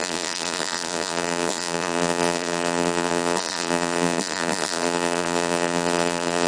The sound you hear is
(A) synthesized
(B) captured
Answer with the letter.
A